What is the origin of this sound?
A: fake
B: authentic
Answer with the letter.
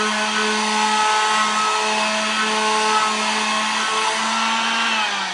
B